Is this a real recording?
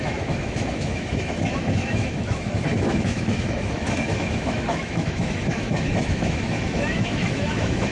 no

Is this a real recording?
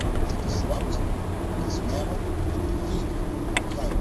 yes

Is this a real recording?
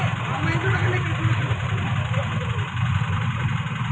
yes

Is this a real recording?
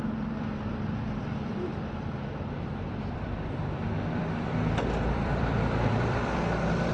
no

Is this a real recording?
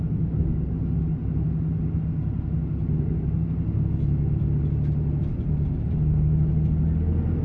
yes